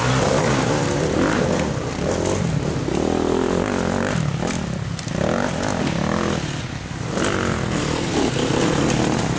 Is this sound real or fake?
real